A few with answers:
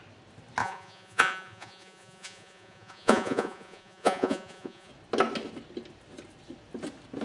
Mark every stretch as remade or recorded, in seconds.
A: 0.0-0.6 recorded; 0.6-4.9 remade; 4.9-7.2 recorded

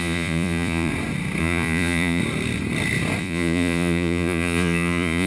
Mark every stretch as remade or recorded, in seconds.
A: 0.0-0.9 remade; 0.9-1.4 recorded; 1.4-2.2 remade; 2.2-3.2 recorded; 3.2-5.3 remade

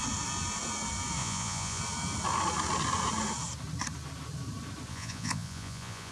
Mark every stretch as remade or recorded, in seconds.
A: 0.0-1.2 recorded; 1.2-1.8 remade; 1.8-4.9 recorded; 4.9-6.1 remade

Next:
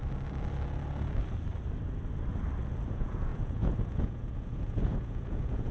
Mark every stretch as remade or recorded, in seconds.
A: 0.0-2.9 recorded; 2.9-5.7 remade

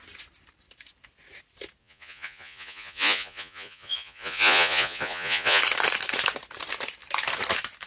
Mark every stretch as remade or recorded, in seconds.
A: 0.0-1.8 recorded; 1.8-5.6 remade; 5.6-7.9 recorded

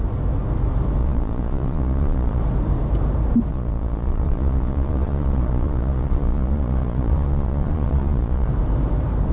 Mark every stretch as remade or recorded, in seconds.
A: 0.0-1.0 recorded; 1.0-2.4 remade; 2.4-3.5 recorded; 3.5-8.5 remade; 8.5-9.3 recorded

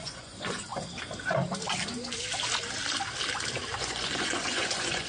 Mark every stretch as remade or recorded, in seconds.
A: 0.0-0.7 remade; 0.7-3.8 recorded; 3.8-5.1 remade